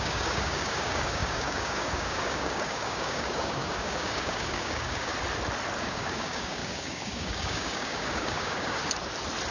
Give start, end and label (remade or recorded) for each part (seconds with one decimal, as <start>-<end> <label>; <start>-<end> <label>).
0.0-5.1 remade; 5.1-5.8 recorded; 5.8-8.8 remade; 8.8-9.5 recorded